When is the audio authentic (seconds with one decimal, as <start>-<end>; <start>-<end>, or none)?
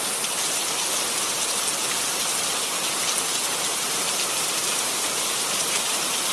0.6-4.4